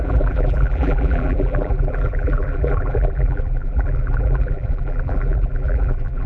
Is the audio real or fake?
fake